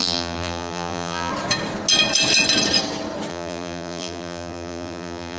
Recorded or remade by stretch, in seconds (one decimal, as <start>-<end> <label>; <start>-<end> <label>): 0.0-1.3 remade; 1.3-3.3 recorded; 3.3-5.4 remade